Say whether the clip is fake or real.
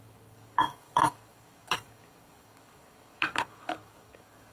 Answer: fake